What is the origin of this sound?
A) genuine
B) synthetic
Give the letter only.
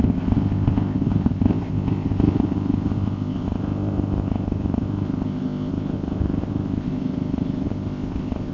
B